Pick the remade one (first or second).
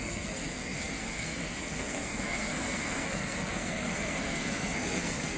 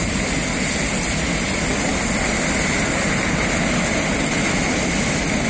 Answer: first